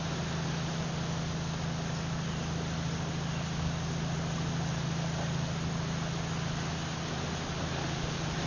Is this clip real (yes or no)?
yes